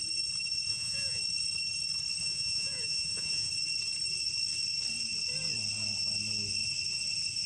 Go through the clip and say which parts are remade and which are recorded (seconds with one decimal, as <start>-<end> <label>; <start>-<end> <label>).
0.0-0.7 recorded; 0.7-1.2 remade; 1.2-2.2 recorded; 2.2-3.5 remade; 3.5-7.5 recorded